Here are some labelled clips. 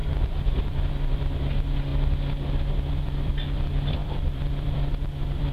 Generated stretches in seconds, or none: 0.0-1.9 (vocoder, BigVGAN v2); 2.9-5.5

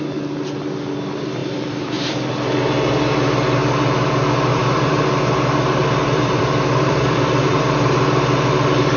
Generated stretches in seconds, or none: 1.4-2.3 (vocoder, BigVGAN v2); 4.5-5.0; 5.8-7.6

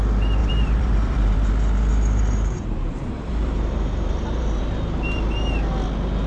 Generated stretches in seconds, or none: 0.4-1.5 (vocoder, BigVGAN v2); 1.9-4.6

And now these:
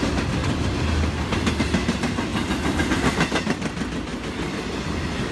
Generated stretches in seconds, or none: 0.0-0.4 (vocoder, BigVGAN v2); 1.6-4.1

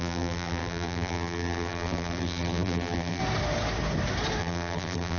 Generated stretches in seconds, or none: 0.0-3.2 (vocoder, BigVGAN v2); 4.4-5.2

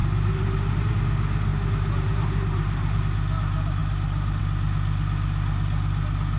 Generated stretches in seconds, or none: 0.0-0.9 (vocoder, BigVGAN v2); 1.5-3.0; 3.8-4.4